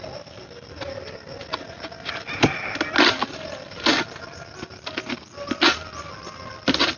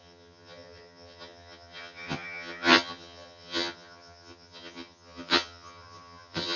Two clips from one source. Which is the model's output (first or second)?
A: second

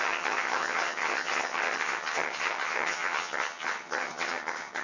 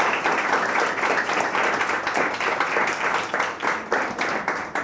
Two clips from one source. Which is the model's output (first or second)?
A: first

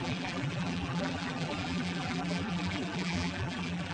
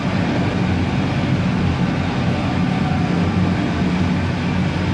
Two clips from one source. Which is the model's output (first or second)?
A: first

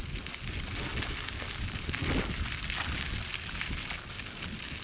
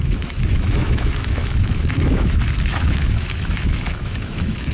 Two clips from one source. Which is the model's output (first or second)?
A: second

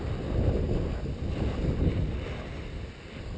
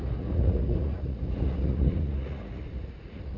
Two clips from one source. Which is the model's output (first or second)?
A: second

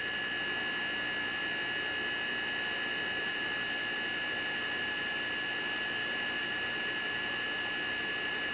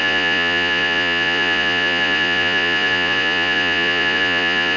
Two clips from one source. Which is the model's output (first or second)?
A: second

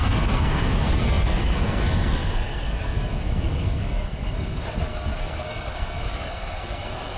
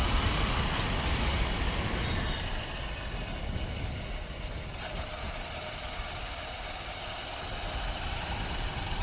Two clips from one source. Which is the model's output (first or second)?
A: first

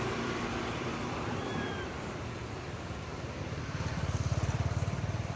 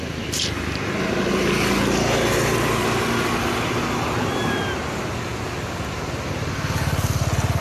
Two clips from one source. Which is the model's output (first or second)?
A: first